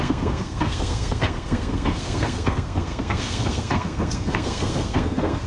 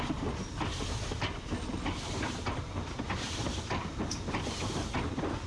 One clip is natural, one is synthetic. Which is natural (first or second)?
second